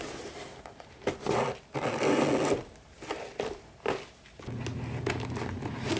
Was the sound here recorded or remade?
recorded